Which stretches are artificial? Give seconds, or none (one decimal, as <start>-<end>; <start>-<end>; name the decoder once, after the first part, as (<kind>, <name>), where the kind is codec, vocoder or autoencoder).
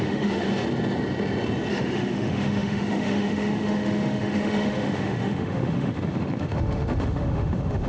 0.0-0.5 (autoencoder, DAC-VAE); 1.7-7.9